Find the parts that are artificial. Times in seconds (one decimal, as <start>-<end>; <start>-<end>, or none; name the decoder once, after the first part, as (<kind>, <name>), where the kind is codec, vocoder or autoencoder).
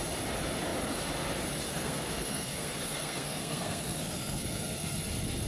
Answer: 1.7-5.0 (codec, SNAC)